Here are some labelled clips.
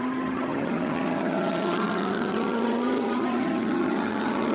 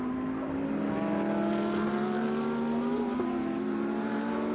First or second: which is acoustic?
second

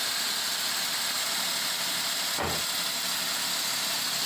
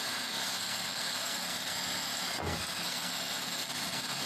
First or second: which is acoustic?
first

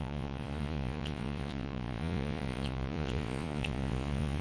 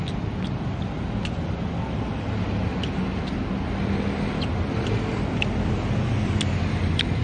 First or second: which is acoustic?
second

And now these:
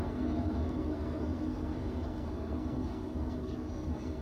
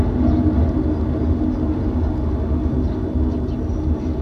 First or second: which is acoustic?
second